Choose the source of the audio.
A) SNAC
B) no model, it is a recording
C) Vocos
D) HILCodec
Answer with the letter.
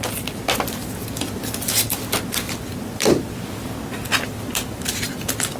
B